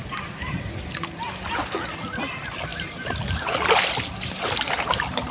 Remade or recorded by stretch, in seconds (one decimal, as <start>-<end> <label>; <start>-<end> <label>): 0.0-1.5 remade; 1.5-2.7 recorded; 2.7-4.1 remade; 4.1-5.3 recorded